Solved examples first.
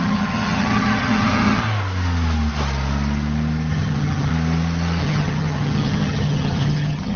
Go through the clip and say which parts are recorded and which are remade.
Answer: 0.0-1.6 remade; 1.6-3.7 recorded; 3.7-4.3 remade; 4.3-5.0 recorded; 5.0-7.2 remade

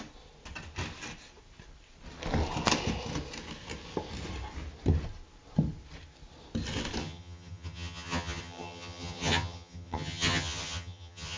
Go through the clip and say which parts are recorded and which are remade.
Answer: 0.0-7.0 recorded; 7.0-11.4 remade

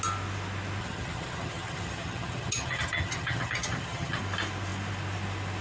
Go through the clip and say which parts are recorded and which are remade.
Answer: 0.0-0.8 recorded; 0.8-4.2 remade; 4.2-5.6 recorded